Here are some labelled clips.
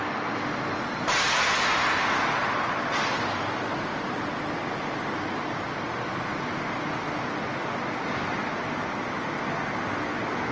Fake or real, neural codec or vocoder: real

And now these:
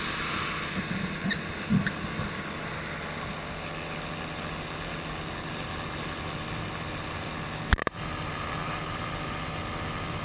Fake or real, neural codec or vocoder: real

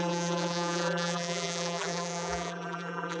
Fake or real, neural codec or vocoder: fake, vocoder, BigVGAN v2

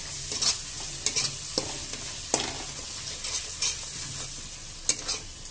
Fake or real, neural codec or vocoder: real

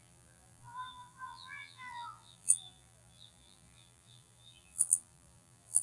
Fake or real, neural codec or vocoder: fake, vocoder, BigVGAN v2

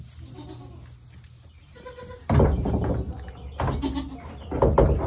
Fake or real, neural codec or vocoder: real